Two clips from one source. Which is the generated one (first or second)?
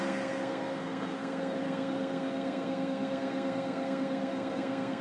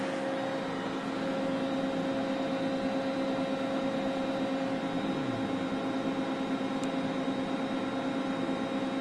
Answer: first